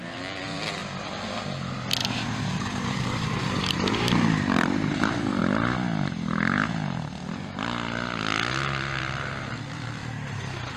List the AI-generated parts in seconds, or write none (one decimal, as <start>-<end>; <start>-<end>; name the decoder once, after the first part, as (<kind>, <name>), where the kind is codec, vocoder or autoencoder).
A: 2.0-5.4 (vocoder, BigVGAN v2); 10.0-10.8